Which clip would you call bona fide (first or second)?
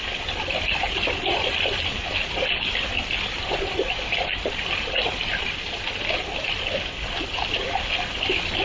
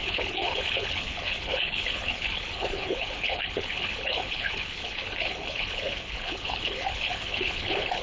first